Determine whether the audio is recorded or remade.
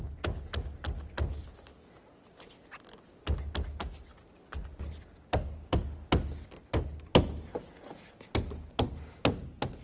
recorded